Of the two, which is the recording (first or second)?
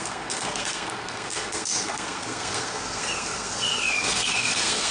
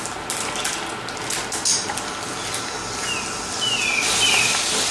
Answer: second